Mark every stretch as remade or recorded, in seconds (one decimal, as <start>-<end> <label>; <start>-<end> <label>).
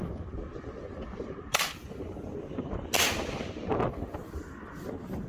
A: 0.0-5.3 recorded